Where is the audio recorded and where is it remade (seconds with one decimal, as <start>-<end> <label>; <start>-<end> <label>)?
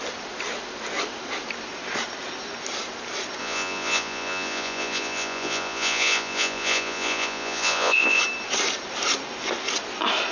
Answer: 0.0-3.4 recorded; 3.4-8.2 remade; 8.2-10.3 recorded